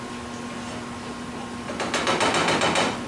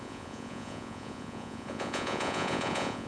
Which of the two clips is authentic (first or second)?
first